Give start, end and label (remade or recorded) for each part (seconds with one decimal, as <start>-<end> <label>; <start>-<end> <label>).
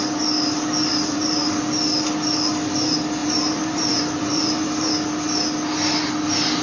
0.0-0.9 recorded; 0.9-1.5 remade; 1.5-3.2 recorded; 3.2-4.9 remade; 4.9-6.6 recorded